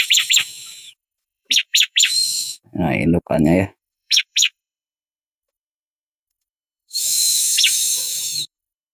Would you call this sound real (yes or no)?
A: no